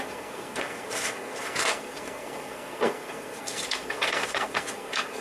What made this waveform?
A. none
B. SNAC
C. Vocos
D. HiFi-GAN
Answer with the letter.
B